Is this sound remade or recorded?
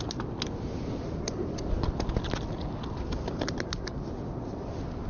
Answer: recorded